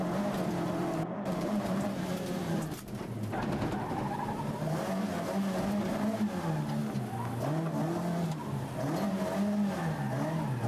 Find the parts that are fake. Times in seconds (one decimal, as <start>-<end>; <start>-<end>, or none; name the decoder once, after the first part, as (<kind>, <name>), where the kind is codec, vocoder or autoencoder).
0.8-3.0 (vocoder, BigVGAN v2)